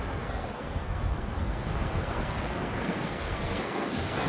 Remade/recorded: remade